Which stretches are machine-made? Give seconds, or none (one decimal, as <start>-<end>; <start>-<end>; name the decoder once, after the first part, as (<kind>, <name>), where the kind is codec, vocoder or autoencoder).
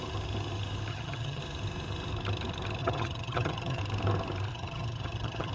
0.9-1.4 (vocoder, HiFi-GAN); 2.8-3.8; 4.5-5.5